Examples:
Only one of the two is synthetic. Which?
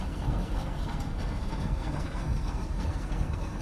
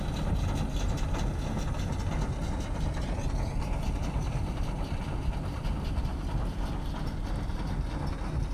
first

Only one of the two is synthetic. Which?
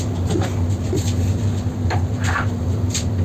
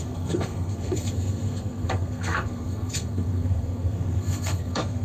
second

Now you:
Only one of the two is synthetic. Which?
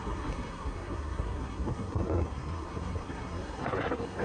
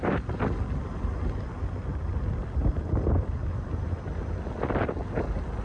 first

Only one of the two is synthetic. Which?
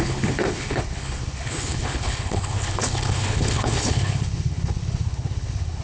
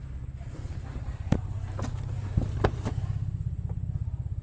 first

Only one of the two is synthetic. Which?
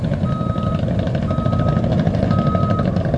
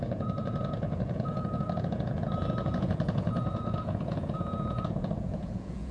second